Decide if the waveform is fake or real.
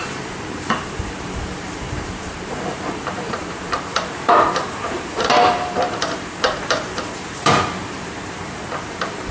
fake